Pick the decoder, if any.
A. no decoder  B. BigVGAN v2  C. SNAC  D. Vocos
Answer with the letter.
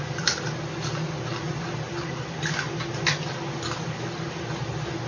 A